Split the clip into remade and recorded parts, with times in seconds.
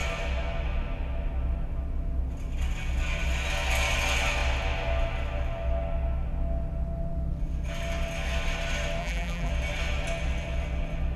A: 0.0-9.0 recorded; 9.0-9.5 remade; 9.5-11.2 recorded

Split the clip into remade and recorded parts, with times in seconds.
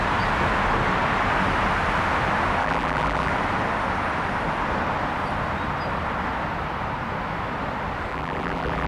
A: 0.0-2.6 recorded; 2.6-3.3 remade; 3.3-8.1 recorded; 8.1-8.9 remade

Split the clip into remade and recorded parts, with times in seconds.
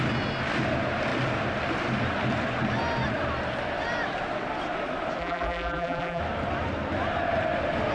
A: 0.0-5.2 recorded; 5.2-6.2 remade; 6.2-7.9 recorded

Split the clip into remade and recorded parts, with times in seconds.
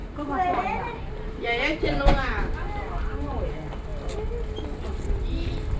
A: 0.0-3.5 remade; 3.5-5.8 recorded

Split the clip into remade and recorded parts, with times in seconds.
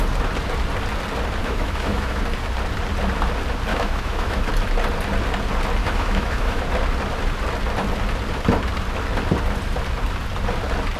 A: 0.0-1.4 recorded; 1.4-2.2 remade; 2.2-3.7 recorded; 3.7-4.5 remade; 4.5-5.8 recorded; 5.8-6.6 remade; 6.6-11.0 recorded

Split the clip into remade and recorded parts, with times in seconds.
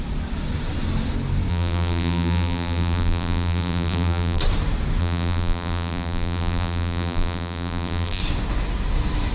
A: 0.0-1.5 recorded; 1.5-4.4 remade; 4.4-5.0 recorded; 5.0-8.2 remade; 8.2-9.3 recorded